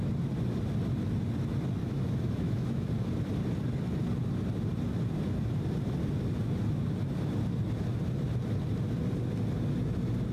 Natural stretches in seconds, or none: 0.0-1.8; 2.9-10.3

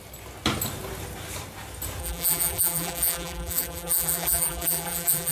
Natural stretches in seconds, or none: 0.0-2.0

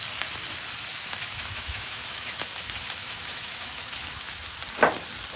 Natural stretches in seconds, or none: 0.0-0.9; 2.4-3.0; 4.6-5.4